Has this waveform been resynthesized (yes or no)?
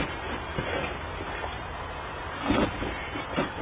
yes